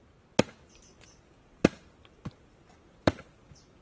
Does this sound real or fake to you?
fake